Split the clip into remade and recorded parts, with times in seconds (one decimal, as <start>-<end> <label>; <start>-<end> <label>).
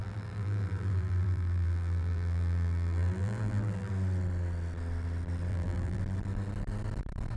0.0-3.9 remade; 3.9-5.5 recorded; 5.5-6.0 remade; 6.0-7.4 recorded